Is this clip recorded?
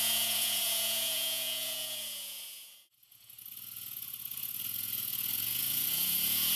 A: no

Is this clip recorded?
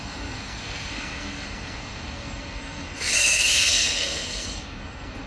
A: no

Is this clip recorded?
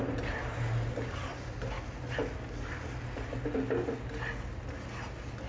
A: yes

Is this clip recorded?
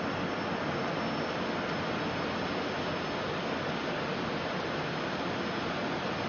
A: yes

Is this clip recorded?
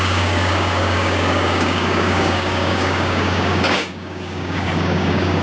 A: no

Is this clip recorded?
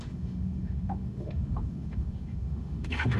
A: no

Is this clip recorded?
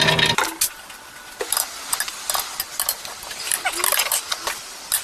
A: yes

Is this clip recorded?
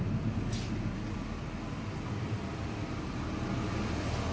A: yes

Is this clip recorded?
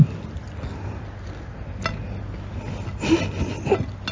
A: yes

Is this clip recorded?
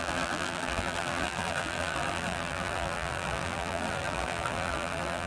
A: no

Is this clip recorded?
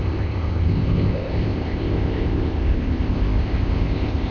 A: no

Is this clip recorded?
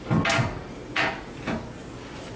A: yes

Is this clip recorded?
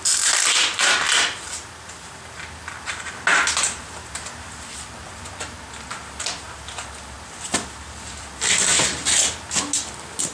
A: yes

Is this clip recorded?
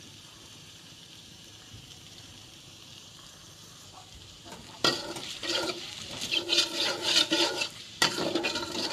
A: no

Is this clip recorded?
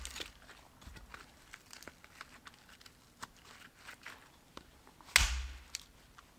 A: yes